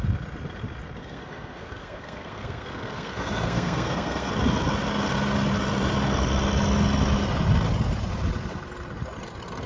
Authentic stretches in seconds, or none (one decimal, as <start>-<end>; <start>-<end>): 0.0-1.0; 4.3-9.7